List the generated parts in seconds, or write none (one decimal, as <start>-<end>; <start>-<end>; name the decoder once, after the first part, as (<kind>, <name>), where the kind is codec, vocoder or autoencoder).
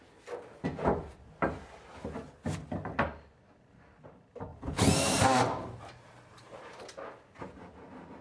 4.5-6.8 (vocoder, BigVGAN v2)